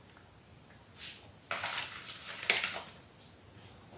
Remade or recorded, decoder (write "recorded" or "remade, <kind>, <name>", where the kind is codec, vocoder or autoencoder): recorded